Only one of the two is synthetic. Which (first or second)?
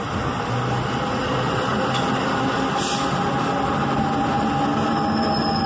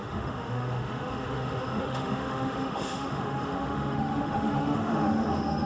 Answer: second